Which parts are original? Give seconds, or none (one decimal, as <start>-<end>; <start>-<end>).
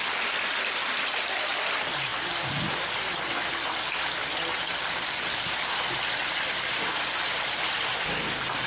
0.0-8.7